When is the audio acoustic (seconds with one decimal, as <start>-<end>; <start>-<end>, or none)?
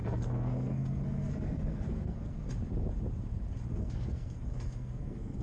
2.5-3.7